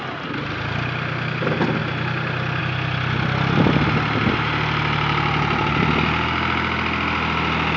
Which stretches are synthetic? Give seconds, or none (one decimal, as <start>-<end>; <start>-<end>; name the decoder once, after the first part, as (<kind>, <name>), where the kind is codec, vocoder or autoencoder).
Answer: none